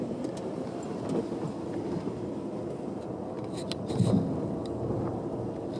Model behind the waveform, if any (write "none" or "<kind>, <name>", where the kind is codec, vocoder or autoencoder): none